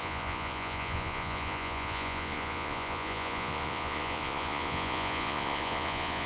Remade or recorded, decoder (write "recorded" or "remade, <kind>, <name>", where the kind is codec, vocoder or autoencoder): remade, vocoder, Vocos